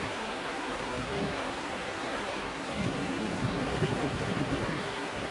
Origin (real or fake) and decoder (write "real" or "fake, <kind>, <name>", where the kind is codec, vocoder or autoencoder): fake, codec, SNAC